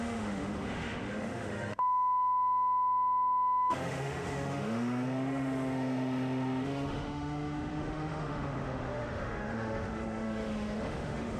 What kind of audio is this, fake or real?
fake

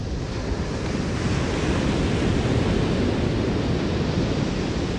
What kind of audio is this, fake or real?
real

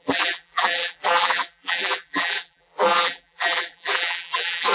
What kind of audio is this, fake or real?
fake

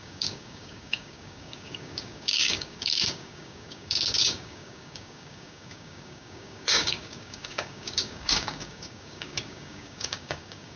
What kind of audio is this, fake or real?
fake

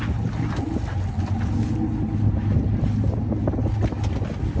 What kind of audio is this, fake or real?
real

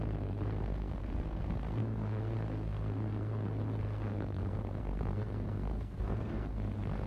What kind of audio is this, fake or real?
fake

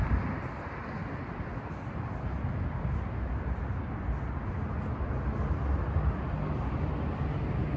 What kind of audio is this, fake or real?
real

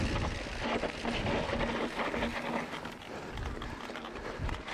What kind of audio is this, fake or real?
real